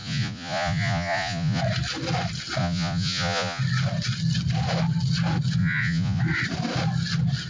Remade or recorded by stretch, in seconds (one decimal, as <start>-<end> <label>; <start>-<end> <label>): 0.0-1.6 remade; 1.6-2.6 recorded; 2.6-3.6 remade; 3.6-5.6 recorded; 5.6-6.2 remade; 6.2-7.5 recorded